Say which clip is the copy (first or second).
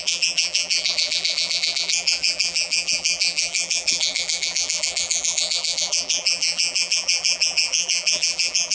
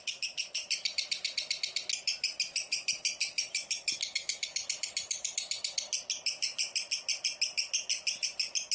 first